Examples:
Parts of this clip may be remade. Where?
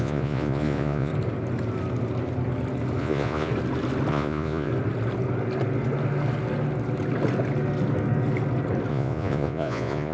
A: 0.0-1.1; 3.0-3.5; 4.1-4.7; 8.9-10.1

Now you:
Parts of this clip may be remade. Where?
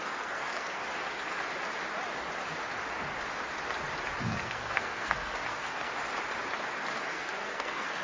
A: 0.0-0.8; 4.2-5.9; 7.1-8.0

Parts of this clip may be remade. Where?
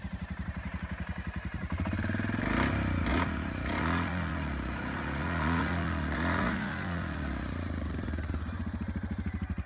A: 3.1-8.3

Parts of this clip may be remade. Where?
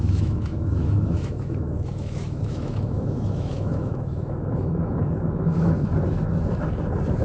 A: 0.0-5.9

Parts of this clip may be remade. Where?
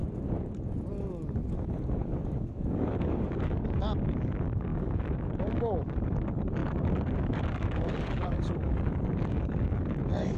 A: 0.9-10.4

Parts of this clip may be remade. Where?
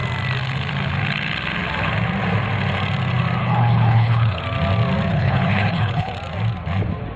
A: 3.4-4.4; 5.1-6.1